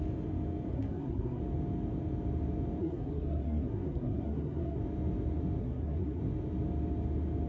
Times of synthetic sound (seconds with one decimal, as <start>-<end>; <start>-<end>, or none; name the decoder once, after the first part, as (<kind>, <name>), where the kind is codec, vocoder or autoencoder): 0.7-1.4 (codec, SNAC); 2.8-4.8; 5.6-6.2